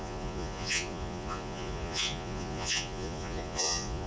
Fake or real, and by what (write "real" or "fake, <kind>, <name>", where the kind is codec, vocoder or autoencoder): fake, vocoder, Vocos